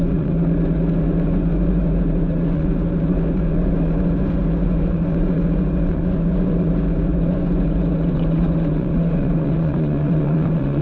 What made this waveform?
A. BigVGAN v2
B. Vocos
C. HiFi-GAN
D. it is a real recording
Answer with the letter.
B